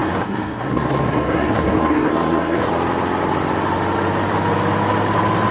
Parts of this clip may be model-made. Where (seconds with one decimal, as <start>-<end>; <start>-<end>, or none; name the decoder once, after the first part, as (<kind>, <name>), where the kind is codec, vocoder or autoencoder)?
0.0-2.7 (codec, SNAC)